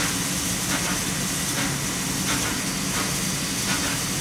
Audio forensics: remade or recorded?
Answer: recorded